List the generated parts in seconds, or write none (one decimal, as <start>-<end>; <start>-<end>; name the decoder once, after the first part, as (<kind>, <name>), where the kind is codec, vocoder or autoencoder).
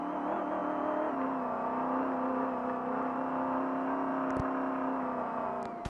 none